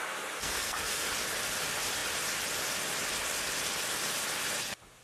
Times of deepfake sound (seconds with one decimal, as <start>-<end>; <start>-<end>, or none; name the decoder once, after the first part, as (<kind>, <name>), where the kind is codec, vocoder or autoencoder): 0.4-1.1 (codec, SNAC)